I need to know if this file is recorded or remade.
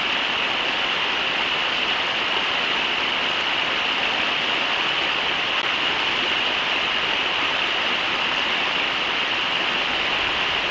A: recorded